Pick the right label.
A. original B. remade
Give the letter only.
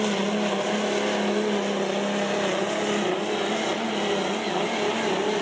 A